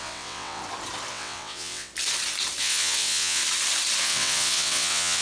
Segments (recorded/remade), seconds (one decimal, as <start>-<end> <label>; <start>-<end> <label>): 0.0-0.6 remade; 0.6-1.1 recorded; 1.1-1.9 remade; 1.9-2.6 recorded; 2.6-3.4 remade; 3.4-4.0 recorded; 4.0-5.2 remade